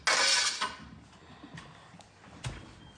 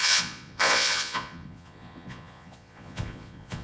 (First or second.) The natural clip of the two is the first